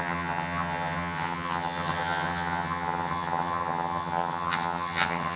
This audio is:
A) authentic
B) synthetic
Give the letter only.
B